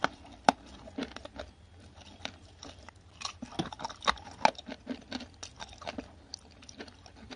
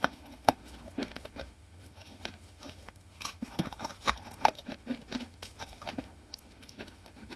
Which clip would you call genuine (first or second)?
first